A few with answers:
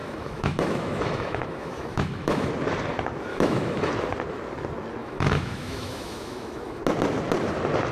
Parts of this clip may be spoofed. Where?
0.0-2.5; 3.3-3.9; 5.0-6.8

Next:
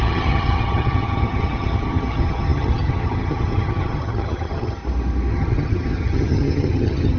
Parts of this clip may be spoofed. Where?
0.0-4.8; 5.3-7.2

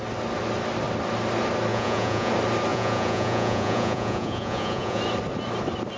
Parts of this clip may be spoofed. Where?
1.7-2.3; 2.7-5.0